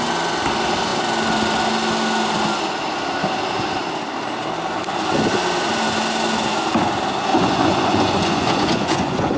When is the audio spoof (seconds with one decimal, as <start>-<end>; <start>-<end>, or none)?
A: 7.3-9.4